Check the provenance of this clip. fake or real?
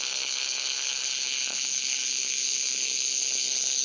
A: fake